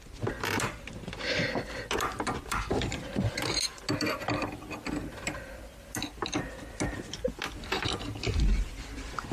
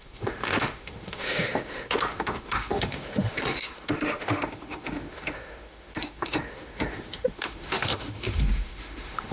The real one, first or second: first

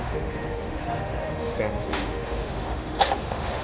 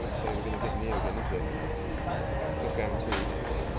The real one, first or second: second